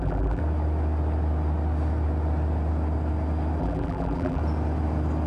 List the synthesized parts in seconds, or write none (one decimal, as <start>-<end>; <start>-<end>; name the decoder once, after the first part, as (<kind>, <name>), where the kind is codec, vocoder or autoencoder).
0.0-0.4 (vocoder, BigVGAN v2); 3.6-4.4